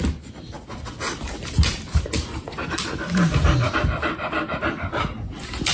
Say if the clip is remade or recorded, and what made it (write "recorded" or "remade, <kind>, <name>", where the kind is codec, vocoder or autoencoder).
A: recorded